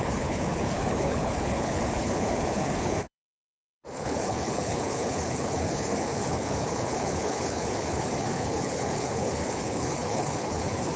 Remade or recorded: remade